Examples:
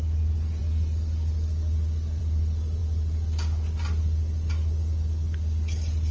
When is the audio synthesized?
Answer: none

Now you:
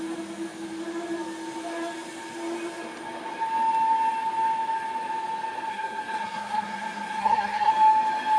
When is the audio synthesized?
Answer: 5.7-7.7 (codec, SNAC)

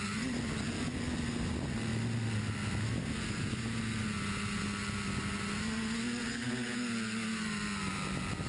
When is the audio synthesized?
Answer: none

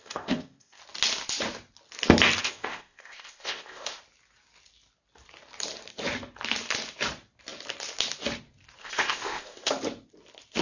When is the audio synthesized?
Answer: 0.0-0.8 (codec, ZipCodec); 2.4-4.0; 8.8-9.7

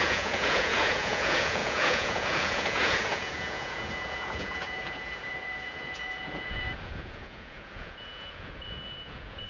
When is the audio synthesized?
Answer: 0.0-9.5 (vocoder, Vocos)